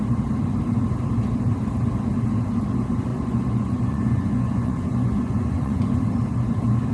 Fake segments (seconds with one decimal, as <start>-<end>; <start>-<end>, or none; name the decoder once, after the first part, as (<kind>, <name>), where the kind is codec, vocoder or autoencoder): 3.1-6.0 (vocoder, Vocos)

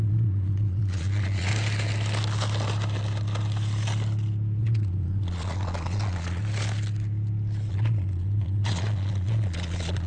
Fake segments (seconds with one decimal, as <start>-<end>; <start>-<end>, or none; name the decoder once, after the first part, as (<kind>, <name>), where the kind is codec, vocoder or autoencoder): 0.0-1.5 (vocoder, Vocos); 4.6-6.4; 7.7-10.1

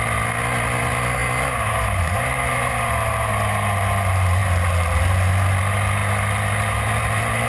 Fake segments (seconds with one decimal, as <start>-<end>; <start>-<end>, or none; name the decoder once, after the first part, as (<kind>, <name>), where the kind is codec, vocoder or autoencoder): none

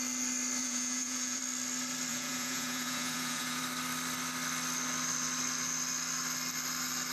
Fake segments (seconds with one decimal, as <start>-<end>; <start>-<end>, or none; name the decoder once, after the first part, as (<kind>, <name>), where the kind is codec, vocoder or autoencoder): 0.6-1.4 (vocoder, Vocos); 2.1-3.6

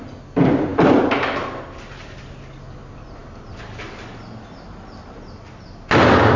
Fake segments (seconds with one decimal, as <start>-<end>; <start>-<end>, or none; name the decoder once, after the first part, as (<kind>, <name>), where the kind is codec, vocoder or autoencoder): none

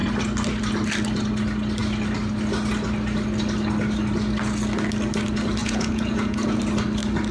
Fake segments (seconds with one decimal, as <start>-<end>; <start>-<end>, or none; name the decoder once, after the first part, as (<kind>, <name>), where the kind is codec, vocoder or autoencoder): 5.6-6.6 (vocoder, Vocos)